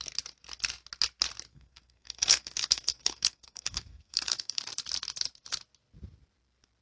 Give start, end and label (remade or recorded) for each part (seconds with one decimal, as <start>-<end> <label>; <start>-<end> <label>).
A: 0.0-1.5 recorded; 1.5-4.6 remade; 4.6-6.8 recorded

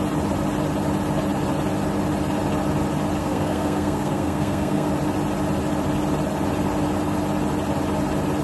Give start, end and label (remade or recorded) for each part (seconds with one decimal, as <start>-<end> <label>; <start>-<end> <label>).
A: 0.0-3.2 recorded; 3.2-4.9 remade; 4.9-8.4 recorded

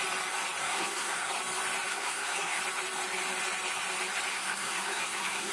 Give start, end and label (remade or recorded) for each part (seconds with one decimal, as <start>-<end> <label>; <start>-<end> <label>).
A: 0.0-0.6 recorded; 0.6-1.3 remade; 1.3-1.9 recorded; 1.9-2.6 remade; 2.6-4.3 recorded; 4.3-5.5 remade

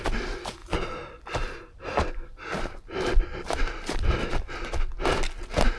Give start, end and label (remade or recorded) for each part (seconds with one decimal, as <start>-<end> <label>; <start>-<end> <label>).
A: 0.0-5.8 recorded